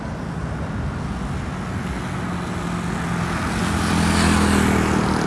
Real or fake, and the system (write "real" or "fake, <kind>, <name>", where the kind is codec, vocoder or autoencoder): real